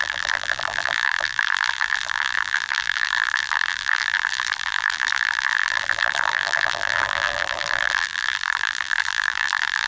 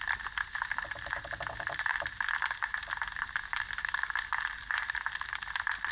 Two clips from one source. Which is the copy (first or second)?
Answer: first